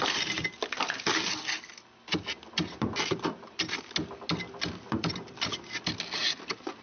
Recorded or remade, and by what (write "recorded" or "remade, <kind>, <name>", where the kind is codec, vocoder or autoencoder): recorded